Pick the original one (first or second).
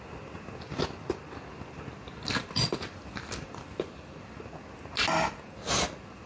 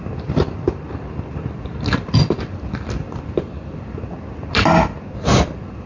first